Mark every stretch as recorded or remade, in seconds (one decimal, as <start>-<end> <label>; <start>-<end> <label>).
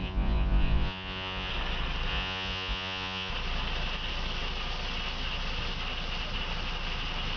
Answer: 0.0-1.5 remade; 1.5-2.1 recorded; 2.1-3.3 remade; 3.3-7.4 recorded